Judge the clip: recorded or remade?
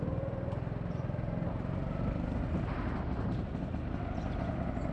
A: recorded